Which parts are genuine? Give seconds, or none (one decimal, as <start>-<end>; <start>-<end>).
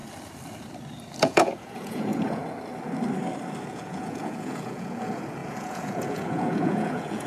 0.0-1.2; 2.4-3.6